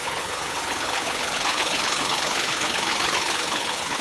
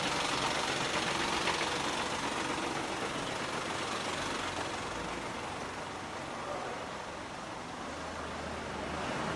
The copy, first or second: first